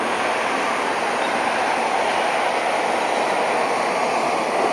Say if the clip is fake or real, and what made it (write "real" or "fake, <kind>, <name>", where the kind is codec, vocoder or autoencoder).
real